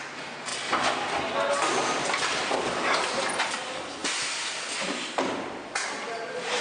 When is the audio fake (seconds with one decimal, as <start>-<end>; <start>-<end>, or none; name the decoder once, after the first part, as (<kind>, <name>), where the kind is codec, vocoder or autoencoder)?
none